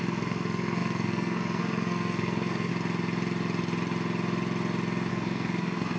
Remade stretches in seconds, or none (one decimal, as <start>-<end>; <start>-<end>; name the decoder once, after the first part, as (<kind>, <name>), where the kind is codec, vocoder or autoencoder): 0.0-2.7 (codec, SNAC); 5.1-6.0